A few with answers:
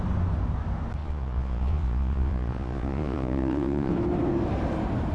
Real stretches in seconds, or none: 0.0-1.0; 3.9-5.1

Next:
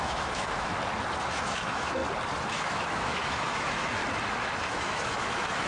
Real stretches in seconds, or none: 0.7-1.3; 2.0-2.5; 4.0-4.6